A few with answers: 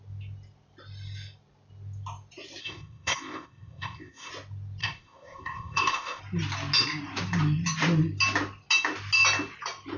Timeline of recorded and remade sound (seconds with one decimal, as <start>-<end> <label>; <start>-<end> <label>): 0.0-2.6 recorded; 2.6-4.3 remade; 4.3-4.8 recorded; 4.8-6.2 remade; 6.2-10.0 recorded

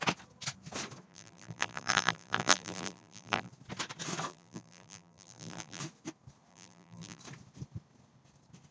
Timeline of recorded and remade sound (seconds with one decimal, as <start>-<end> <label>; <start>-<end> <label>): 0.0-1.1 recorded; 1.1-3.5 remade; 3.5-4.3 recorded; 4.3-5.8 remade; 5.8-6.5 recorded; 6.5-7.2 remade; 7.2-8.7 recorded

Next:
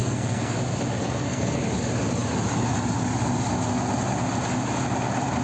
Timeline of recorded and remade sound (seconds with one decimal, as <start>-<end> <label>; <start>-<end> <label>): 0.0-0.6 remade; 0.6-1.0 recorded; 1.0-1.6 remade; 1.6-5.4 recorded

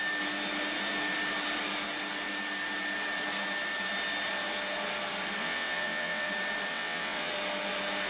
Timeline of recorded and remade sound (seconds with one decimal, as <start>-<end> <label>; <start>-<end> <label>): 0.0-5.4 recorded; 5.4-6.3 remade; 6.3-6.7 recorded; 6.7-7.3 remade; 7.3-8.1 recorded

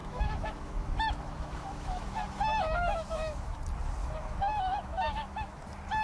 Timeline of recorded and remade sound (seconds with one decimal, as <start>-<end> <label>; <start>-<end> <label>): 0.0-3.6 remade; 3.6-4.0 recorded; 4.0-5.6 remade; 5.6-6.0 recorded

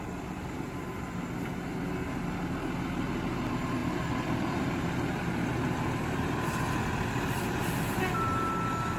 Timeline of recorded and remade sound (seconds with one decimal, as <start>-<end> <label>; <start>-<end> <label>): 0.0-9.0 recorded